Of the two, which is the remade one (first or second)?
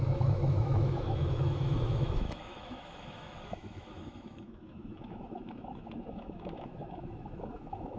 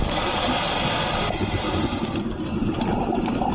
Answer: first